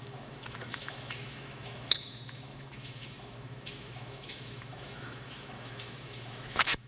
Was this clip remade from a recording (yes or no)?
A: yes